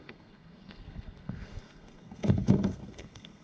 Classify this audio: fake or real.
fake